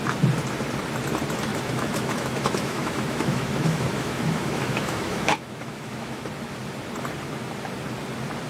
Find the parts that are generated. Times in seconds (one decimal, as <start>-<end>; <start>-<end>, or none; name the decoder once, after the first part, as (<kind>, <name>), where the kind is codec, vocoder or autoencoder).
1.5-6.2 (autoencoder, DAC-VAE)

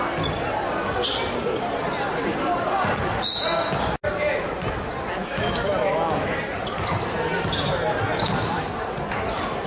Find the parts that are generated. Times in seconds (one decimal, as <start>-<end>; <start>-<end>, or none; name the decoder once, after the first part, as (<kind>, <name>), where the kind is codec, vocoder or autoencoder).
5.2-6.3 (autoencoder, DAC-VAE)

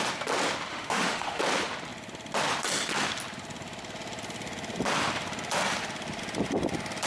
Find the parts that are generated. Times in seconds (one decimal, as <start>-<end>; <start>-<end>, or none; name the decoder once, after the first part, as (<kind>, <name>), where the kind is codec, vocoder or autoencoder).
0.7-1.4 (autoencoder, DAC-VAE)

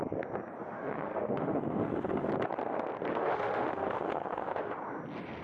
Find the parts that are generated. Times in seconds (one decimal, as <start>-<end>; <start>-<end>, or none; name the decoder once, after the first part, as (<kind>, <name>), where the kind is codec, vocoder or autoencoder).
0.6-2.3 (autoencoder, DAC-VAE); 3.1-4.8

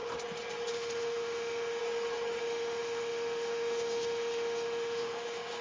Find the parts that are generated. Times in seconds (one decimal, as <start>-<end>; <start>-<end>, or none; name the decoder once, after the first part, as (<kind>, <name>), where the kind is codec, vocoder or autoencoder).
0.7-1.8 (autoencoder, DAC-VAE); 2.4-5.6

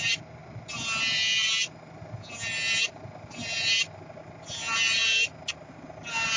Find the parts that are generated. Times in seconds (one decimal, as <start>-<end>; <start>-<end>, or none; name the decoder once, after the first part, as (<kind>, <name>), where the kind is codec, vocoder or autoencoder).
none